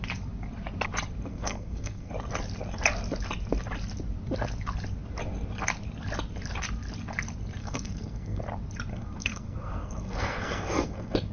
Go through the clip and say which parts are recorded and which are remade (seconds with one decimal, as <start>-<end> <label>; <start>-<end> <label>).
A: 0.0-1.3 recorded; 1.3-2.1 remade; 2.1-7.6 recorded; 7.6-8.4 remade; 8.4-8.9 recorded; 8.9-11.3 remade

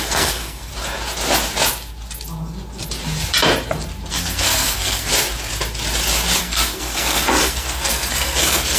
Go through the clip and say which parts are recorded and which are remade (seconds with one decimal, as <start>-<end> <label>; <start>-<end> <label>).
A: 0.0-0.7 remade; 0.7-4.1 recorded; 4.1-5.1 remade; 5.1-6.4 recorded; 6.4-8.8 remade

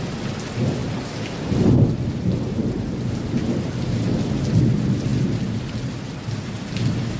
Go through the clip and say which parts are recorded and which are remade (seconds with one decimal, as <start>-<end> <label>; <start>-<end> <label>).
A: 0.0-7.2 recorded

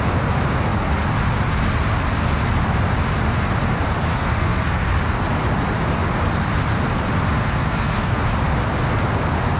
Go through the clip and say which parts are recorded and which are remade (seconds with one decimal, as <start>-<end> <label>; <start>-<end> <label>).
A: 0.0-4.1 recorded; 4.1-4.9 remade; 4.9-7.3 recorded; 7.3-8.2 remade; 8.2-9.6 recorded

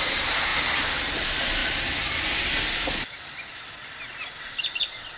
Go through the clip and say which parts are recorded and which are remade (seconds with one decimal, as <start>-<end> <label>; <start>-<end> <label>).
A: 0.0-5.2 recorded

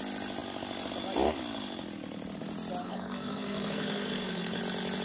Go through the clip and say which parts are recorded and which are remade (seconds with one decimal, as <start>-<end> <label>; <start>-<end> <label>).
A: 0.0-2.8 recorded; 2.8-4.6 remade; 4.6-5.0 recorded

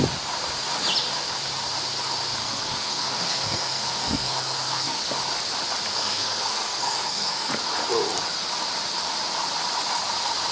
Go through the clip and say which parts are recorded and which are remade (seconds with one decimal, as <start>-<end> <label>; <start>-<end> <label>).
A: 0.0-2.4 recorded; 2.4-5.0 remade; 5.0-5.9 recorded; 5.9-7.5 remade; 7.5-10.5 recorded

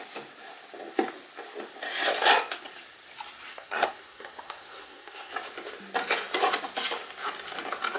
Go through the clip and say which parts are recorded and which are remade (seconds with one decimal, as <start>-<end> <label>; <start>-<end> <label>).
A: 0.0-3.5 recorded; 3.5-5.3 remade; 5.3-8.0 recorded